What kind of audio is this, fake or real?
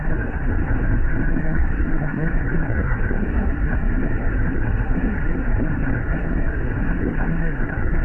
fake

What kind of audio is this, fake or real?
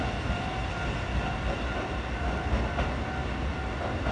real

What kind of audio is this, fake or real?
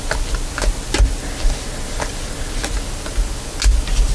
real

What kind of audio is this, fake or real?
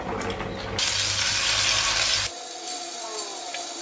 real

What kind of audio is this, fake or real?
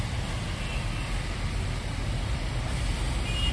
real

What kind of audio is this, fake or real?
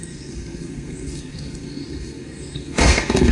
fake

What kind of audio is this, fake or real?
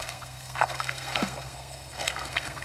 fake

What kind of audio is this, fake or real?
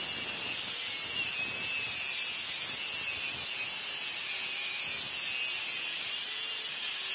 real